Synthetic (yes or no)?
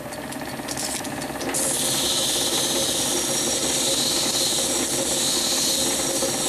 no